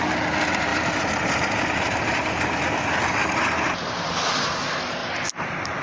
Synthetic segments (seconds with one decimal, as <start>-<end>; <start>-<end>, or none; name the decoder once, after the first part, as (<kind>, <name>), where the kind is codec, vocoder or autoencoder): 0.7-2.6 (vocoder, BigVGAN v2); 3.2-4.3; 5.0-5.8